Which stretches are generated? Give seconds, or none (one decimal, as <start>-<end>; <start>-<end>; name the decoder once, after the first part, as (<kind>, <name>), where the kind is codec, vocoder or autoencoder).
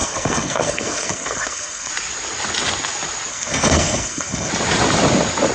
0.0-1.9 (codec, SNAC); 3.3-4.5